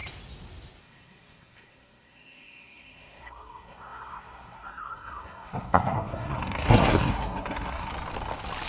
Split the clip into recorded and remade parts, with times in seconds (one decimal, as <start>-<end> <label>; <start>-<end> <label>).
0.0-0.8 recorded; 0.8-7.9 remade; 7.9-8.7 recorded